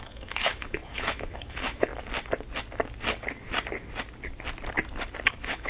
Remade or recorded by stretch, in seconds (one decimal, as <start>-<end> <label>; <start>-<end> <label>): 0.0-1.9 remade; 1.9-5.3 recorded; 5.3-5.7 remade